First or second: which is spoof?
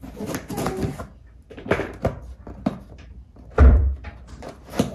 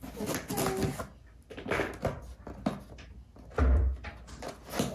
first